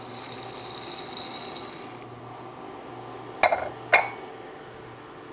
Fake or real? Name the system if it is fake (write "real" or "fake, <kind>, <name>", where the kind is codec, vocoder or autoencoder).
real